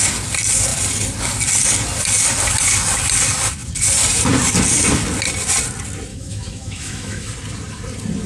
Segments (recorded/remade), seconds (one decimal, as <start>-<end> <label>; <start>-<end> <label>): 0.0-6.1 recorded; 6.1-7.3 remade; 7.3-8.3 recorded

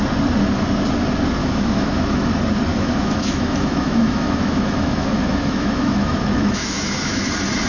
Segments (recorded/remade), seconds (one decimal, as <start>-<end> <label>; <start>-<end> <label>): 0.0-1.4 recorded; 1.4-2.3 remade; 2.3-2.7 recorded; 2.7-7.3 remade; 7.3-7.7 recorded

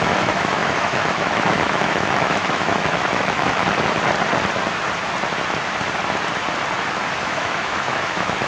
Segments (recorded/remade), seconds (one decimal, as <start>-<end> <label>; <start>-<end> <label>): 0.0-3.6 remade; 3.6-7.2 recorded; 7.2-8.5 remade

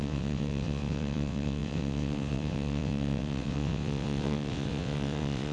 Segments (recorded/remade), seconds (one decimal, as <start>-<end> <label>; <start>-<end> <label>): 0.0-5.5 remade

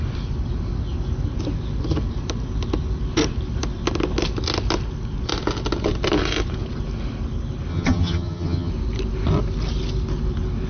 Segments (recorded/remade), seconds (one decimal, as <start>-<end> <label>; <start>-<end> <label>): 0.0-7.7 recorded; 7.7-8.7 remade; 8.7-10.7 recorded